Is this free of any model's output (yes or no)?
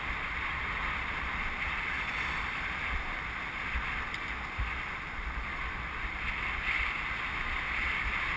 no